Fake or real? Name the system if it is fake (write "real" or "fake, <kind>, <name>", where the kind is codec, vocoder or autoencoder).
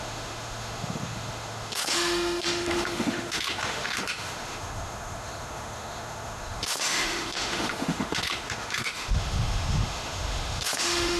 fake, autoencoder, DAC-VAE